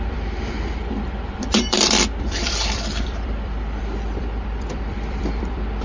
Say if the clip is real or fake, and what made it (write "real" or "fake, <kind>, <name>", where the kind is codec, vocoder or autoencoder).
fake, vocoder, BigVGAN v2